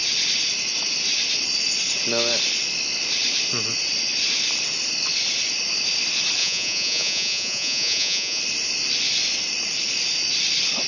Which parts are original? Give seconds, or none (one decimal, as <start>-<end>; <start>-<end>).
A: 0.0-6.4; 8.4-10.9